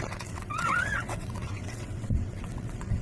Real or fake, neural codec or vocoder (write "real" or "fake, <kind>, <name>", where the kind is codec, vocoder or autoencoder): fake, vocoder, WaveNeXt